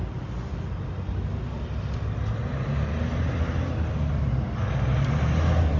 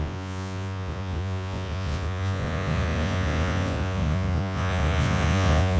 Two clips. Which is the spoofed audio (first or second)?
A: second